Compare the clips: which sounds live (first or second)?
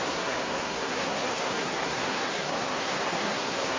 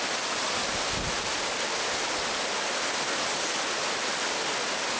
second